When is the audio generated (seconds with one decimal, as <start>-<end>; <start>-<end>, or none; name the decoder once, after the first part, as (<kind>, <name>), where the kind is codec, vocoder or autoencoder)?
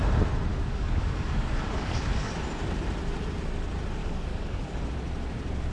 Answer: 0.5-2.3 (codec, DAC); 4.0-4.9